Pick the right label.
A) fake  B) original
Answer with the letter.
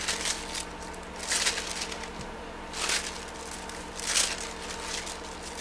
B